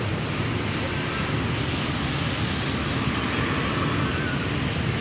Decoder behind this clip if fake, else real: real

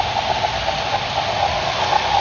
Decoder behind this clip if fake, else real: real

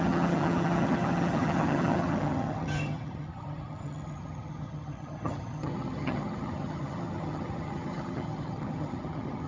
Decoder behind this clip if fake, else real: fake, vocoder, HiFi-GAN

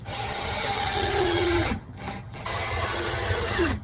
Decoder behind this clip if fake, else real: fake, vocoder, HiFi-GAN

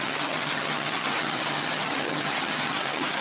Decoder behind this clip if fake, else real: fake, vocoder, HiFi-GAN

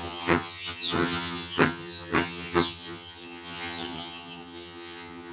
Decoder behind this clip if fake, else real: fake, vocoder, HiFi-GAN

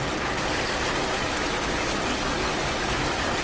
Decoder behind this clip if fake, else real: real